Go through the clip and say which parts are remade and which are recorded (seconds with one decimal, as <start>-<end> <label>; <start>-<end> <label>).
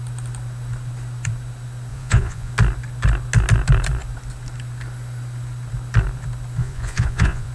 0.0-1.9 recorded; 1.9-2.5 remade; 2.5-6.6 recorded; 6.6-7.5 remade